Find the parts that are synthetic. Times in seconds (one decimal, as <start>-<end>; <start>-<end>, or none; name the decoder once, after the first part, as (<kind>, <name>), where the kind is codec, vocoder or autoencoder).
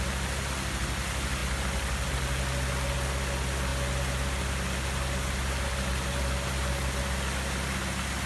none